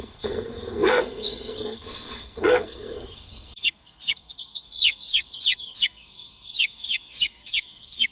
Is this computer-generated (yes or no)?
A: yes